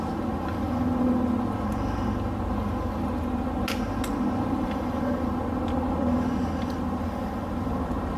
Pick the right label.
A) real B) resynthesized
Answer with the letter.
A